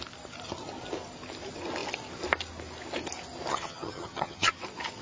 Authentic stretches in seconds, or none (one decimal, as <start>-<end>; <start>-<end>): 0.0-3.5; 4.6-5.0